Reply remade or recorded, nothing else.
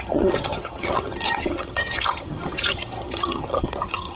remade